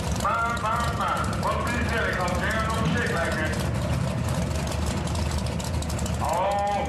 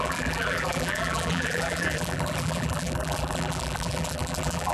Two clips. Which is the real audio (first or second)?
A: first